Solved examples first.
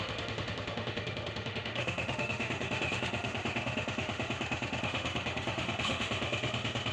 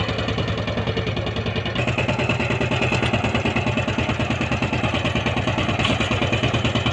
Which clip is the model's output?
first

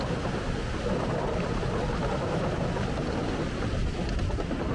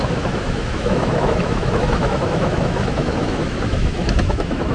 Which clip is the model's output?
second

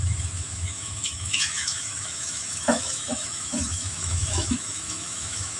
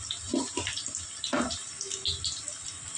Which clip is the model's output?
first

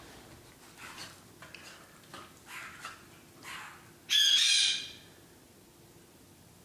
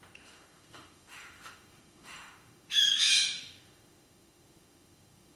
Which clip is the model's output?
second